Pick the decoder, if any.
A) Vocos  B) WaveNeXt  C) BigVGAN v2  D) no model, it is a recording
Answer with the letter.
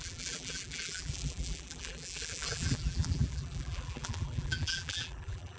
C